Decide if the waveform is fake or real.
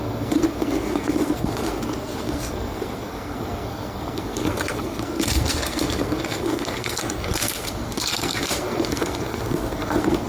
fake